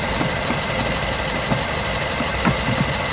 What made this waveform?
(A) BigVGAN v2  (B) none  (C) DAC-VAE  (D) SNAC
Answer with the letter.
B